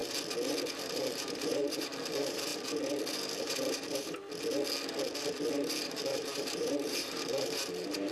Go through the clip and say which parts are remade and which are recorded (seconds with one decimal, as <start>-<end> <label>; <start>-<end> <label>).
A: 0.0-0.7 recorded; 0.7-2.5 remade; 2.5-3.4 recorded; 3.4-4.2 remade; 4.2-5.8 recorded; 5.8-8.1 remade